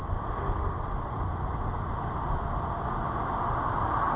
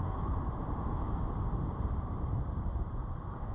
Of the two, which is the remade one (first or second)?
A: second